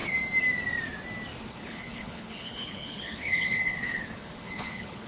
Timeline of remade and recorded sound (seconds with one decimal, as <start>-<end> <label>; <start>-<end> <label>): 0.0-1.5 recorded; 1.5-5.1 remade